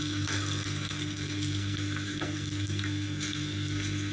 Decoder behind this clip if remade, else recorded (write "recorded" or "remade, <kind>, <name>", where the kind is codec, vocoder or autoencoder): remade, codec, SNAC